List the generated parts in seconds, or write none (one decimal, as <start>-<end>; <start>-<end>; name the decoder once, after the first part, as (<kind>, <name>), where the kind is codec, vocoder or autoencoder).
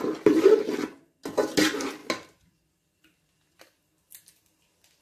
none